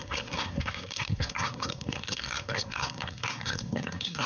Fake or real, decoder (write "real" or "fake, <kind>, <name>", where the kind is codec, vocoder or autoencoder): fake, codec, SNAC